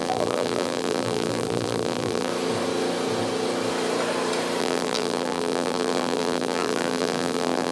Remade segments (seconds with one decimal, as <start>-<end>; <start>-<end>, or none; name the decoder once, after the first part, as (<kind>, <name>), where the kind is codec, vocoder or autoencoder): 0.0-2.3 (vocoder, BigVGAN v2); 4.6-7.7